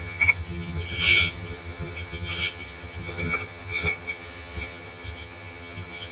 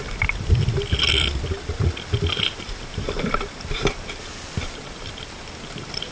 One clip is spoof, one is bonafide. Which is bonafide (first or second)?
second